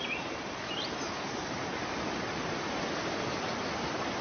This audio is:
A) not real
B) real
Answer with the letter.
B